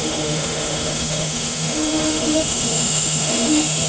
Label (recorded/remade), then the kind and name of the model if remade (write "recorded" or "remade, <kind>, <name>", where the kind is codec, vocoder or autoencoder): remade, autoencoder, DAC-VAE